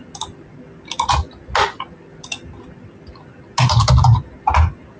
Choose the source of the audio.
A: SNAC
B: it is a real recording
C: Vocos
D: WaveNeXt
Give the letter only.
B